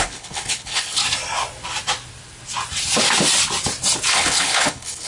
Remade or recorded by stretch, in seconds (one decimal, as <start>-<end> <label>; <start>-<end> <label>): 0.0-1.0 remade; 1.0-4.1 recorded; 4.1-5.1 remade